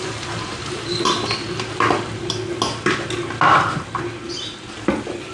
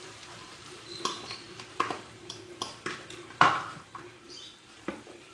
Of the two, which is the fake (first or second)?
second